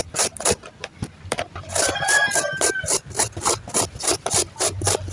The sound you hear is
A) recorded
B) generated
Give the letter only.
B